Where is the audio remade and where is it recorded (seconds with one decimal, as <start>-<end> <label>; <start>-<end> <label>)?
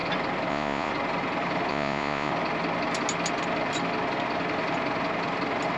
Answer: 0.0-0.5 recorded; 0.5-0.9 remade; 0.9-1.7 recorded; 1.7-2.3 remade; 2.3-5.8 recorded